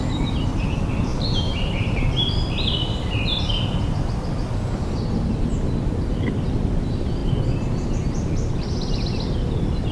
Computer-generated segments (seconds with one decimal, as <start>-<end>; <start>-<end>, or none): 1.1-2.1